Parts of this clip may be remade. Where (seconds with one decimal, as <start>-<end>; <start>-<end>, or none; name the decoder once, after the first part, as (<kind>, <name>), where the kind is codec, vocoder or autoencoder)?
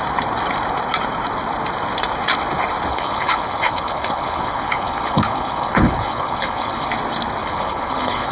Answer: 2.9-6.9 (codec, HILCodec); 7.4-8.3